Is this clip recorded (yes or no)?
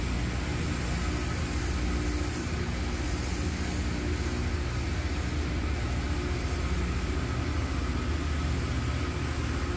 yes